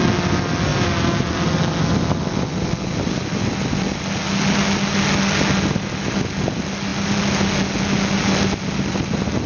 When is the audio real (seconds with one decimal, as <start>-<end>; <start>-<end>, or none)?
0.0-9.5